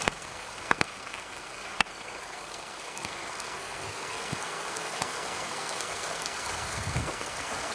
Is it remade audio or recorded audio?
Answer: remade